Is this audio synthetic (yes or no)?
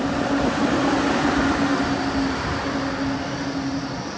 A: no